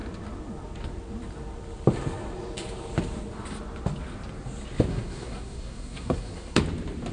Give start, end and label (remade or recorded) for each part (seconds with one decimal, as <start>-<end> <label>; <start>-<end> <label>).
0.0-4.9 recorded; 4.9-6.6 remade; 6.6-7.1 recorded